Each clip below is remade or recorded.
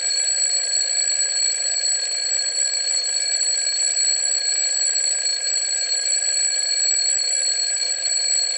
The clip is recorded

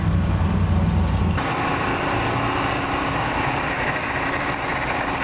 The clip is recorded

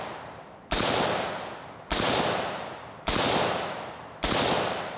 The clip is recorded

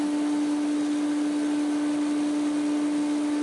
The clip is recorded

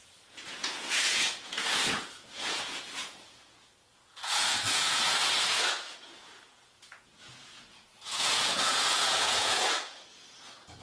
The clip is remade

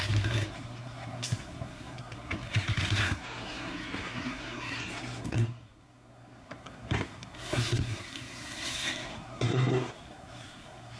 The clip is remade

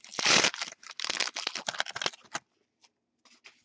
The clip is recorded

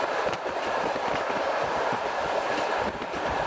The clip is remade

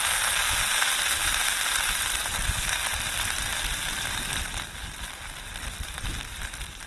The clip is recorded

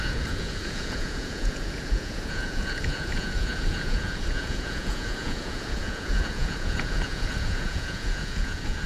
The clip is remade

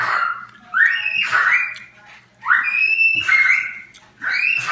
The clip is recorded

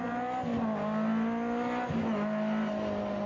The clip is recorded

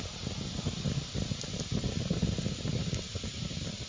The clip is recorded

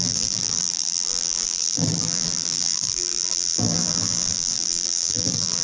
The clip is remade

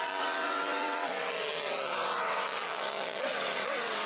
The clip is remade